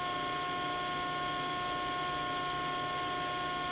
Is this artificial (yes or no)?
no